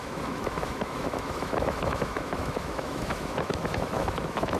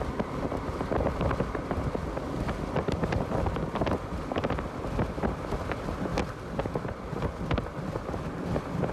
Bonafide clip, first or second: second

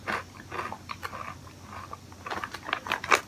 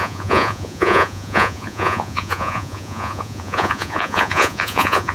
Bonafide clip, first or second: first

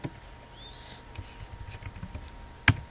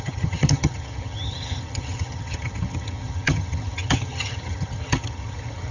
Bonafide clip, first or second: first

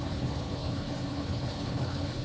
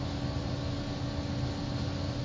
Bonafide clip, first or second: second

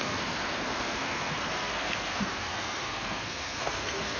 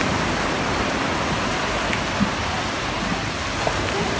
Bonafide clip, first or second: second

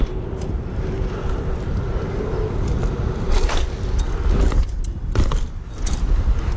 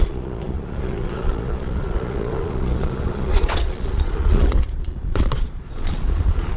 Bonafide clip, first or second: first